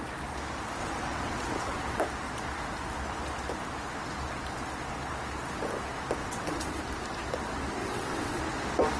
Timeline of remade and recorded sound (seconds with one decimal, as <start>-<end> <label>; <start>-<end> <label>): 0.0-0.8 recorded; 0.8-2.0 remade; 2.0-6.2 recorded; 6.2-6.8 remade; 6.8-7.8 recorded; 7.8-8.4 remade; 8.4-9.0 recorded